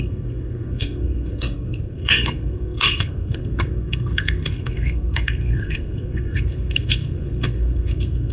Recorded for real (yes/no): no